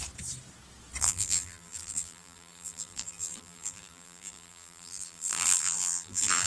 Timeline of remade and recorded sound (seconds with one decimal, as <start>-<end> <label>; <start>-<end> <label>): 0.0-1.0 recorded; 1.0-6.5 remade